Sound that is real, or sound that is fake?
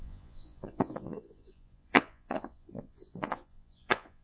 fake